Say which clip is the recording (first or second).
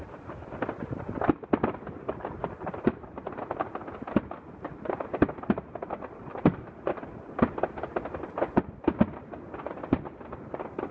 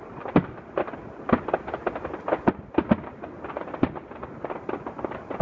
second